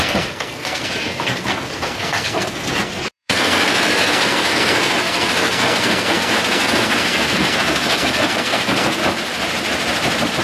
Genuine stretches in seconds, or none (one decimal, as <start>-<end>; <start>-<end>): 9.0-10.4